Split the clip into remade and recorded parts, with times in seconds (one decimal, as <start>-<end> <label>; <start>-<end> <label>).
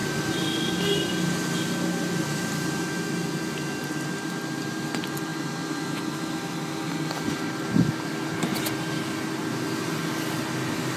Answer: 0.0-11.0 recorded